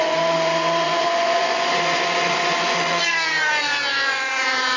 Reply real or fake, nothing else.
fake